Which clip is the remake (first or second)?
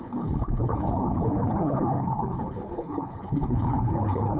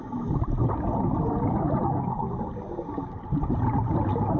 first